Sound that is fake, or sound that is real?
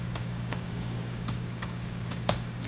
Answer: fake